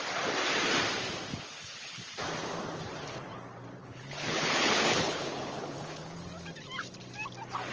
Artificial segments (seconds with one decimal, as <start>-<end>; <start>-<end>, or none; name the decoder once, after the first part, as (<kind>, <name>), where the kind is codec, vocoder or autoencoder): 1.3-2.0 (codec, HILCodec); 3.8-6.2